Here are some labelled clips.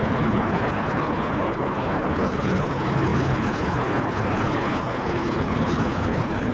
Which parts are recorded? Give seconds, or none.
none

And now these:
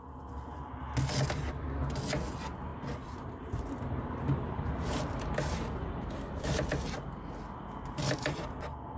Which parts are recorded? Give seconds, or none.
0.0-2.7; 6.7-9.0

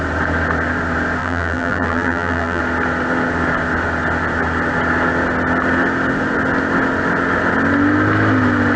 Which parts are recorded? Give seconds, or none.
0.0-1.2; 2.6-8.8

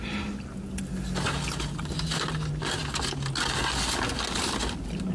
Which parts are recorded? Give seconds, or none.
0.0-5.1